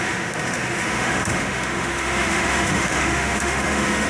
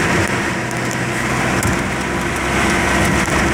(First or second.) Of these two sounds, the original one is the second